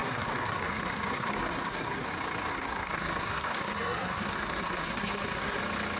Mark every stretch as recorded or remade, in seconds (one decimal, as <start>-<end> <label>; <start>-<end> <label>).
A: 0.0-2.1 remade; 2.1-2.5 recorded; 2.5-5.6 remade; 5.6-6.0 recorded